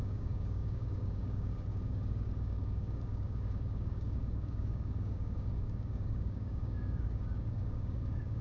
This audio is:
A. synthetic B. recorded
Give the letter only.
A